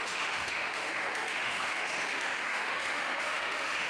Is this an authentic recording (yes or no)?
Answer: no